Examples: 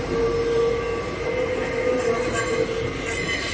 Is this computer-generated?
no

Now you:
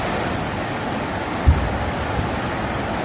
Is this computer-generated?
no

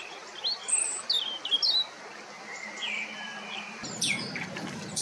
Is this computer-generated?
no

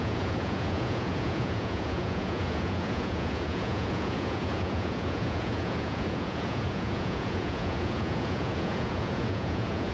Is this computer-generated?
yes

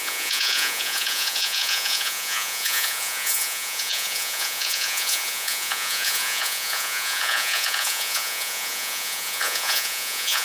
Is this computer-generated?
yes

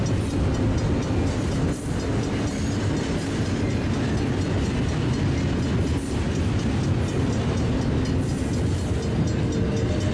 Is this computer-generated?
no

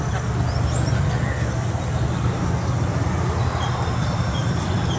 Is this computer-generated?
no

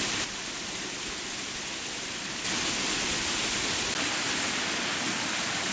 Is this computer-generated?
no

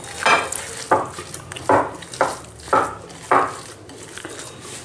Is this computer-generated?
no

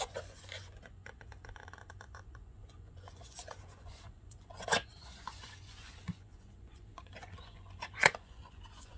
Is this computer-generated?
yes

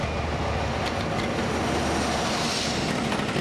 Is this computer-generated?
no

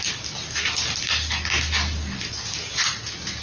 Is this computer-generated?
no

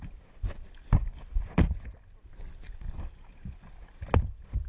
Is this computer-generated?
no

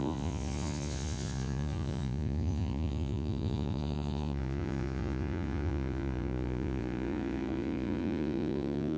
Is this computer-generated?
yes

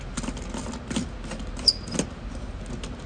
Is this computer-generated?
no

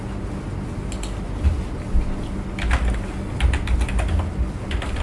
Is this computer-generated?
no